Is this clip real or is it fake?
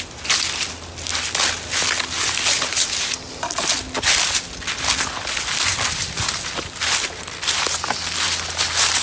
real